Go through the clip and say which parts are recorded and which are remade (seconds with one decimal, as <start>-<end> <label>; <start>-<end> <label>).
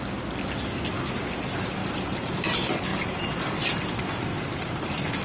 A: 0.0-1.8 recorded; 1.8-2.3 remade; 2.3-2.9 recorded; 2.9-3.7 remade; 3.7-4.3 recorded; 4.3-5.2 remade